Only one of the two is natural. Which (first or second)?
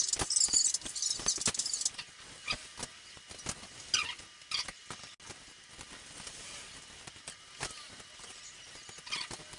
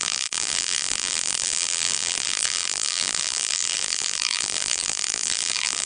first